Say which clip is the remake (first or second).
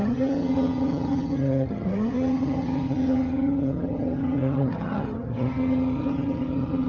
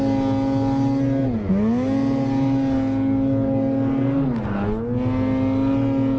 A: first